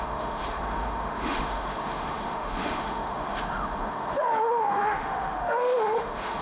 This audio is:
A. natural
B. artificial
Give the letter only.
B